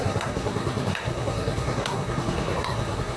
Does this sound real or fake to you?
fake